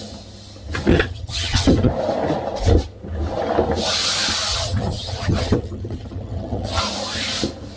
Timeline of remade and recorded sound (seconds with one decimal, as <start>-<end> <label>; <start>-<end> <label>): 0.0-0.9 recorded; 0.9-1.9 remade; 1.9-4.5 recorded; 4.5-6.8 remade; 6.8-7.8 recorded